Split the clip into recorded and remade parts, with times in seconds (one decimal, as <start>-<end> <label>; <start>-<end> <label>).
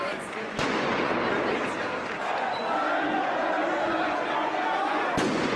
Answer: 0.0-1.1 remade; 1.1-2.4 recorded; 2.4-5.6 remade